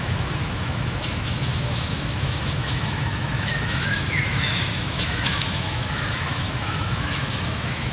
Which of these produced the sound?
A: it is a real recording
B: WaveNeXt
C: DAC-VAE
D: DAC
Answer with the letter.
C